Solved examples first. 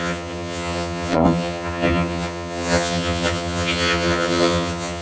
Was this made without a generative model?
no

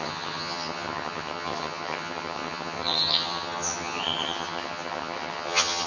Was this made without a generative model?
no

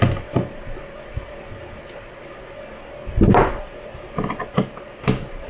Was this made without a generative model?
yes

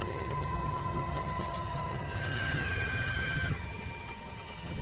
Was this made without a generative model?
no